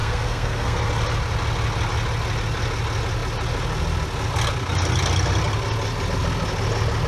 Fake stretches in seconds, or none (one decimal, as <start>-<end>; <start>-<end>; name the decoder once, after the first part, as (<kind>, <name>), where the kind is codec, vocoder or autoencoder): 0.0-0.9 (codec, SNAC)